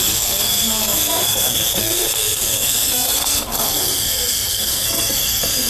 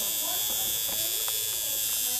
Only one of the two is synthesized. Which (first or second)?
first